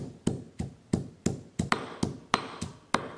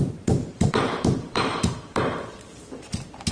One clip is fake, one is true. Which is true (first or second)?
first